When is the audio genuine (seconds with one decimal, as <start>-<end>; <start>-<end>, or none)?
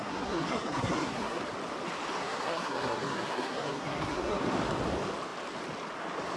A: 1.4-2.2; 4.4-6.4